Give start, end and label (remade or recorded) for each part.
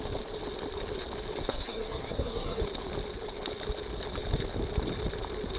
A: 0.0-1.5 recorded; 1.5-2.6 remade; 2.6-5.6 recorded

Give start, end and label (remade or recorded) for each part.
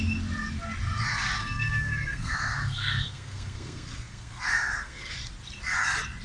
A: 0.0-1.4 recorded; 1.4-5.1 remade; 5.1-6.2 recorded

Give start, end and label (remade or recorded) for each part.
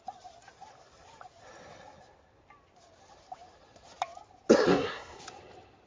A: 0.0-4.7 recorded; 4.7-5.2 remade; 5.2-5.9 recorded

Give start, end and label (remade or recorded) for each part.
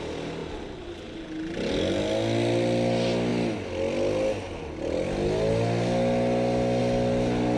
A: 0.0-7.6 recorded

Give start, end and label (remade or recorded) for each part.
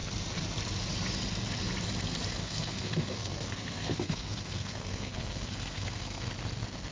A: 0.0-2.4 recorded; 2.4-6.3 remade; 6.3-6.9 recorded